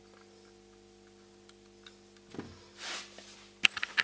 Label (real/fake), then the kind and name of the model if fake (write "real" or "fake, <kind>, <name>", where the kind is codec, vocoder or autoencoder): real